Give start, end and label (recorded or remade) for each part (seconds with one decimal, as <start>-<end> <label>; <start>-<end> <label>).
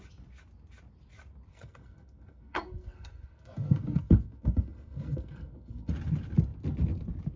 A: 0.0-1.5 recorded; 1.5-5.9 remade; 5.9-7.4 recorded